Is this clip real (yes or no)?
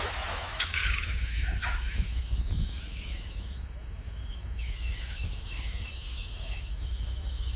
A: no